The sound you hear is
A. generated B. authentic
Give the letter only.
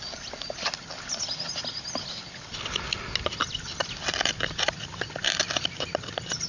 B